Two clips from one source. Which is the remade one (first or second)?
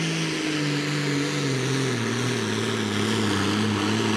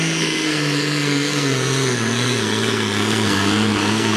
second